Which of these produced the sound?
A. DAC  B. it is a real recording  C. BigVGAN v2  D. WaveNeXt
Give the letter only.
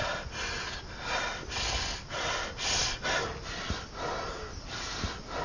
B